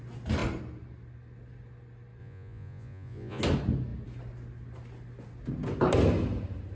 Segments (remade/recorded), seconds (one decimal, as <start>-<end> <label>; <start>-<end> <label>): 0.0-2.2 recorded; 2.2-3.4 remade; 3.4-6.8 recorded